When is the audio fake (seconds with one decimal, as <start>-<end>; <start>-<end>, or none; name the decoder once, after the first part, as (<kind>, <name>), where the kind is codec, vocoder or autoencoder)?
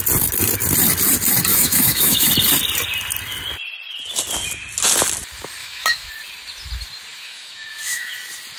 1.5-2.3 (autoencoder, DAC-VAE); 5.6-6.1; 7.1-8.1